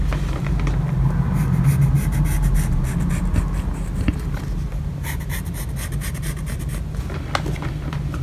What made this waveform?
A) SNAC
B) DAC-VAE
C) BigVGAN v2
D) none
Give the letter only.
D